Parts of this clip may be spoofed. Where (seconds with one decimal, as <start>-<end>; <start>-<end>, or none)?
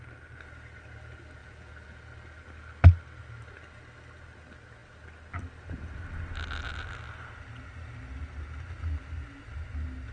1.4-2.0